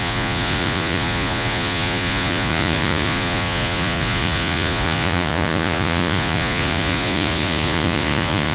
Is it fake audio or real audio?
fake